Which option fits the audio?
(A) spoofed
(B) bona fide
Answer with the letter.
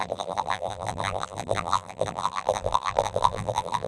A